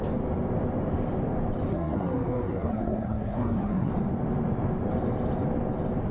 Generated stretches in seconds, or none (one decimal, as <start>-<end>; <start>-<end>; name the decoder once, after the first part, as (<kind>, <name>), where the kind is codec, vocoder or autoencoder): 1.7-3.9 (codec, SNAC)